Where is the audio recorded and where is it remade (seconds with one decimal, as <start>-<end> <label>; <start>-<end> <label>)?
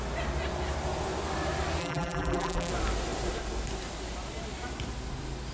0.0-1.8 recorded; 1.8-2.7 remade; 2.7-5.5 recorded